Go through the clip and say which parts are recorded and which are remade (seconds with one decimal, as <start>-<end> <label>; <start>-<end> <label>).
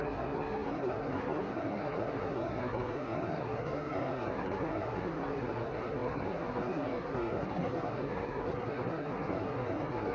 0.0-10.1 remade